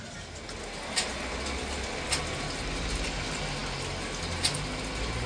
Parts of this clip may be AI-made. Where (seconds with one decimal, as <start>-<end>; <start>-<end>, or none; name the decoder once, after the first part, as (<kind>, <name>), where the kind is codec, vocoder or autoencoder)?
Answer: none